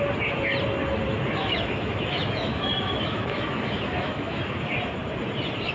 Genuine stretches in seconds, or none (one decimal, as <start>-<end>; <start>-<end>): 0.0-1.4; 4.4-5.7